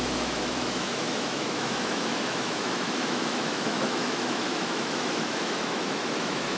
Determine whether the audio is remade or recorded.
remade